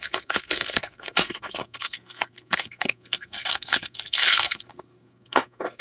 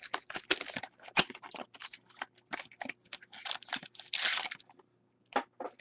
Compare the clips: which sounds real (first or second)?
second